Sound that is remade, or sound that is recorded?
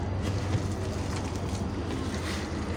recorded